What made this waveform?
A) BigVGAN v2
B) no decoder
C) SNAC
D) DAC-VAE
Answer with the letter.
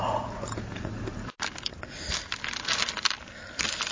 B